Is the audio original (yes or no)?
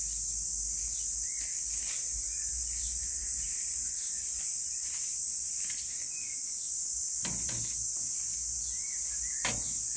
yes